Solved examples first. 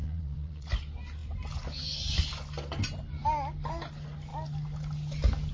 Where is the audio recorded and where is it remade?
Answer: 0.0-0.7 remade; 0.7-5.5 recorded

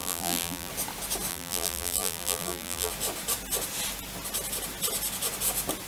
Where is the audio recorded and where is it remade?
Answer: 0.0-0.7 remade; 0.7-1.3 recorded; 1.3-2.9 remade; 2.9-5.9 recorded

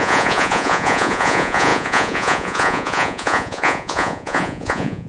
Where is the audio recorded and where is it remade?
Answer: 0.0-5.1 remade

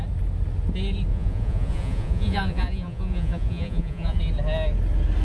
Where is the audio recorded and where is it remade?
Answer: 0.0-1.1 recorded; 1.1-4.2 remade; 4.2-5.2 recorded

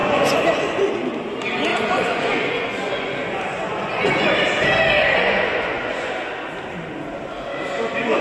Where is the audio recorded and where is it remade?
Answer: 0.0-0.8 remade; 0.8-1.7 recorded; 1.7-4.3 remade; 4.3-5.0 recorded; 5.0-6.1 remade; 6.1-8.2 recorded